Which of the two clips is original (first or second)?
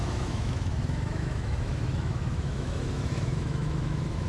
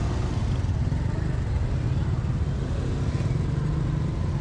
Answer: second